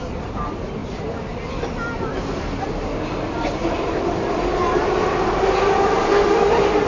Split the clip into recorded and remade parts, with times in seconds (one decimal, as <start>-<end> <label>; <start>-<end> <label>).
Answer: 0.0-6.9 recorded